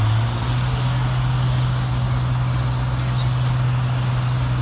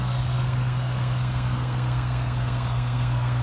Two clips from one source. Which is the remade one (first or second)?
second